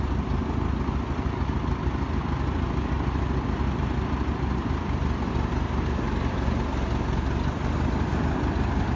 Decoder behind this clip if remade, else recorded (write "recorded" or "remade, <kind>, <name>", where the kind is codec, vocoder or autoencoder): recorded